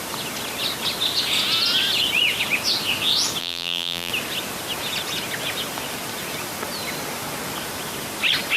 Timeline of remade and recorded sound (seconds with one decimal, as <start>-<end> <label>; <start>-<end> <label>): 0.0-3.4 recorded; 3.4-4.1 remade; 4.1-8.6 recorded